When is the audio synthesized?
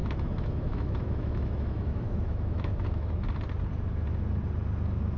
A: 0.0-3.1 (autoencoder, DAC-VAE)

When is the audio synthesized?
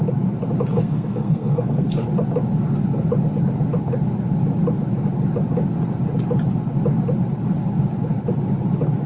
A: 0.7-1.9 (codec, SNAC)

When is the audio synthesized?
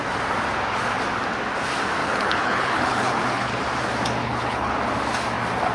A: 2.0-3.6 (codec, HILCodec); 4.2-4.7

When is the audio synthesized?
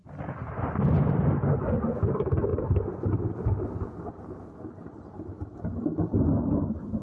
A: none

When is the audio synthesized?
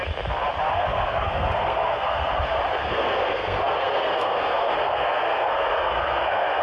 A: 0.7-2.4 (codec, SNAC); 2.8-6.6